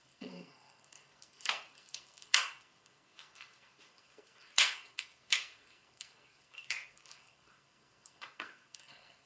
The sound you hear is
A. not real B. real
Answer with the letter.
A